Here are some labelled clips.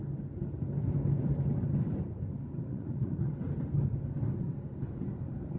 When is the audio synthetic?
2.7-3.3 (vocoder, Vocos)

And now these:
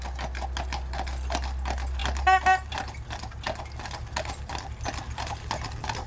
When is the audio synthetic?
none

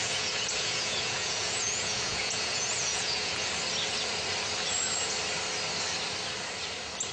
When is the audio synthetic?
0.0-3.5 (vocoder, Vocos)

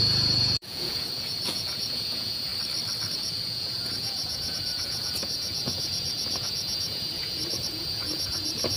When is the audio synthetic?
0.0-2.5 (vocoder, Vocos); 3.1-8.8

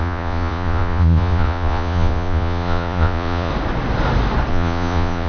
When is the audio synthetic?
0.0-3.5 (vocoder, Vocos); 4.5-5.3

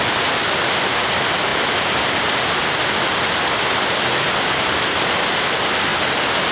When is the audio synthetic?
none

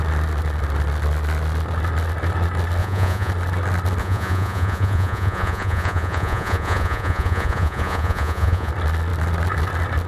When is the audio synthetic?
2.8-3.3 (vocoder, Vocos); 4.0-8.7

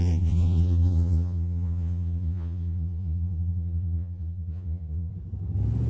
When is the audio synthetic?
0.0-5.1 (vocoder, Vocos)